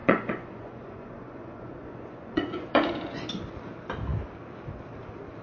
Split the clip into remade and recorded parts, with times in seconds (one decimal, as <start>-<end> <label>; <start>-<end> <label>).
0.0-3.2 remade; 3.2-5.4 recorded